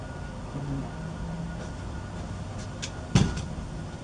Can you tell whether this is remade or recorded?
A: recorded